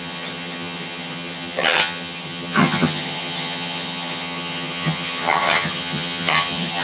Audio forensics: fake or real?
fake